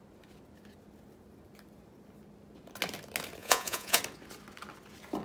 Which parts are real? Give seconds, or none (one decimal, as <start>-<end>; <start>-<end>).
0.0-3.4; 4.0-5.2